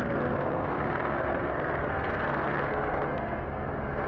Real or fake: fake